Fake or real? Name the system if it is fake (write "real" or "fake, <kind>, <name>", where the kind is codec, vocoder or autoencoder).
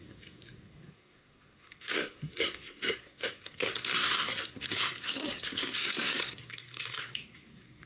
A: fake, codec, SNAC